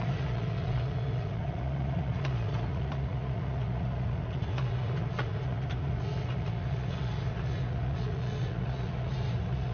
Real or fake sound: fake